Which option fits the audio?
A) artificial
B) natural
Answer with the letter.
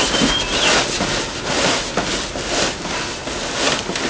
B